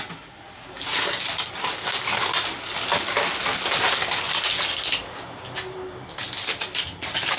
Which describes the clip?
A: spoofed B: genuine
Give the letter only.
B